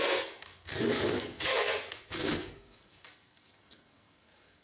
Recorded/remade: remade